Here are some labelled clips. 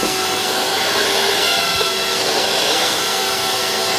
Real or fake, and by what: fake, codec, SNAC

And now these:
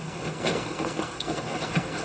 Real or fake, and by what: fake, codec, SNAC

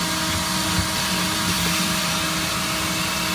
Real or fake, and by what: real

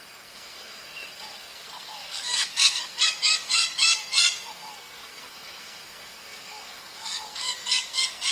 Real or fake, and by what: fake, codec, SNAC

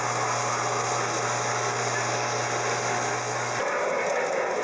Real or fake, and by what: real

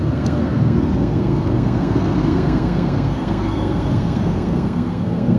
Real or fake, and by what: fake, codec, SNAC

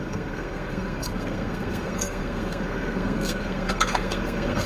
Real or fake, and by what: fake, codec, SNAC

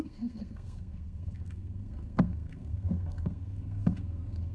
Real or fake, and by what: fake, codec, SNAC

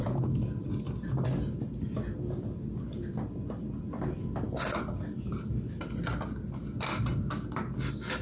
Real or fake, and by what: real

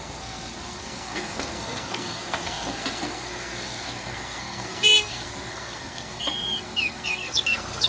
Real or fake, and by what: fake, codec, SNAC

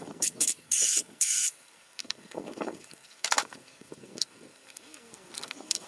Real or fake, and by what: fake, codec, SNAC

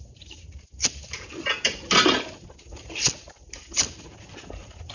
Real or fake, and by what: real